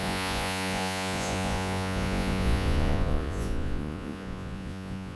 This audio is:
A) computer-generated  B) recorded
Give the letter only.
A